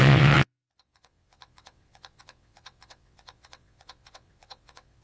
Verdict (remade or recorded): remade